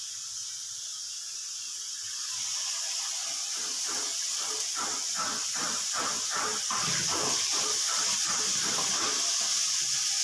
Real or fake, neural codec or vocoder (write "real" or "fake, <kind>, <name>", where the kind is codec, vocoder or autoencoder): real